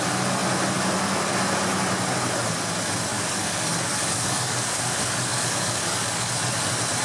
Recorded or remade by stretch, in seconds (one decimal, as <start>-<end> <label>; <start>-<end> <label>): 0.0-3.1 recorded; 3.1-6.3 remade; 6.3-7.0 recorded